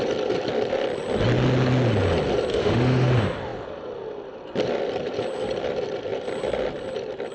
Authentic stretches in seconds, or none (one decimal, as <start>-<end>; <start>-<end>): 0.0-2.5; 3.1-7.3